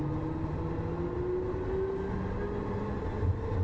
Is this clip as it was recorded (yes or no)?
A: yes